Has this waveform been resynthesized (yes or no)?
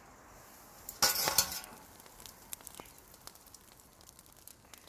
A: no